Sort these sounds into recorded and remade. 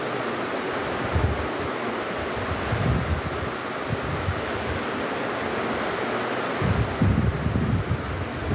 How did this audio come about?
recorded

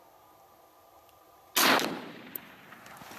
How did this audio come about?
recorded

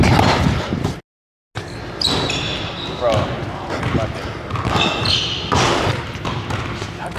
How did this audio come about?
recorded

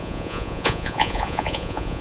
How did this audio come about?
remade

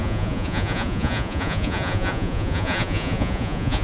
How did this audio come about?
remade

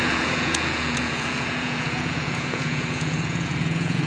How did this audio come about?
remade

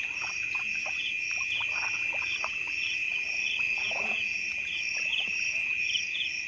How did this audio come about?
remade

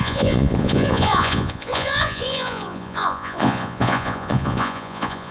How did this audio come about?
remade